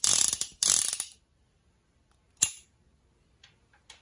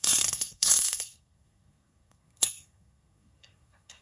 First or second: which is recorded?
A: first